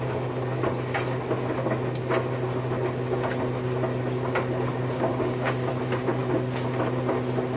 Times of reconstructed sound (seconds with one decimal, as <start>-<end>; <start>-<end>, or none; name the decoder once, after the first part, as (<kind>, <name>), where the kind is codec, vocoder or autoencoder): 5.1-5.7 (codec, DAC)